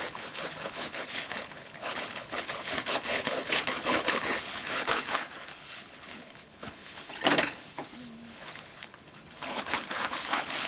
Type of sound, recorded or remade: remade